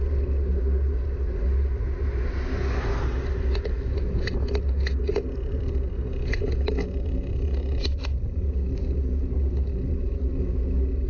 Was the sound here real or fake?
real